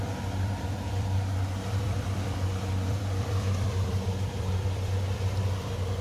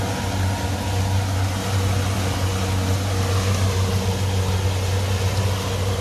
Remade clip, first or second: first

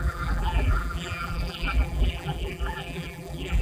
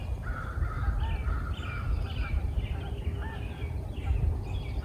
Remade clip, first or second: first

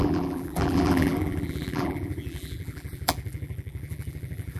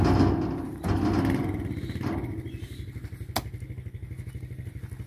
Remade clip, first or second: first